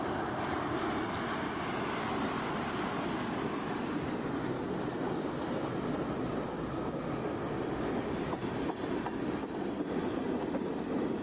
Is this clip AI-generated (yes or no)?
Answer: no